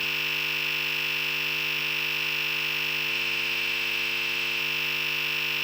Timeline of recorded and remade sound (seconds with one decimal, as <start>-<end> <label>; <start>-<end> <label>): 0.0-3.1 recorded; 3.1-4.6 remade; 4.6-5.6 recorded